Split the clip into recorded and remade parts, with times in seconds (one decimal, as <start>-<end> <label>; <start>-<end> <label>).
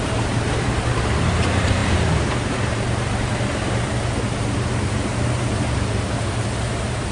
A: 0.0-7.1 remade